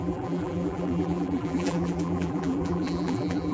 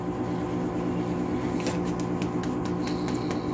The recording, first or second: second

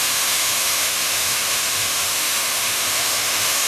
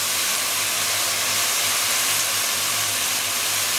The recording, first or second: second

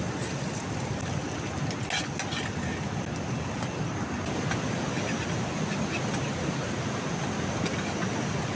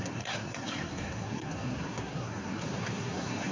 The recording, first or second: first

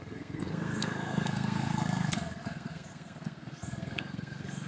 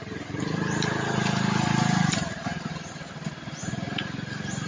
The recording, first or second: second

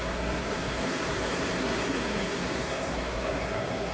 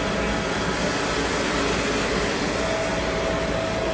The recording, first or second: second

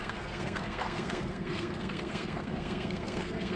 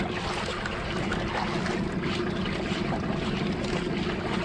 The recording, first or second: second